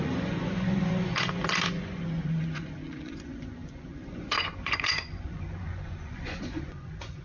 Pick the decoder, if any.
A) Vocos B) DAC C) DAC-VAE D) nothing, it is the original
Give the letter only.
A